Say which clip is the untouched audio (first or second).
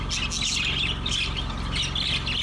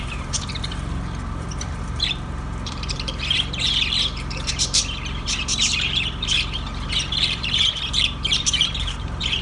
first